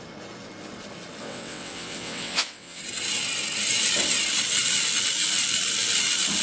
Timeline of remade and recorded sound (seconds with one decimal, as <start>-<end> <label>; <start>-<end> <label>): 0.0-1.2 recorded; 1.2-2.8 remade; 2.8-6.4 recorded